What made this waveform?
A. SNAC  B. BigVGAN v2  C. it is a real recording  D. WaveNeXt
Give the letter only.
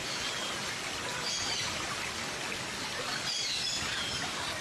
C